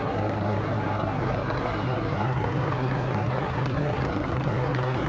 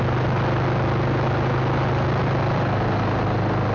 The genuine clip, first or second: second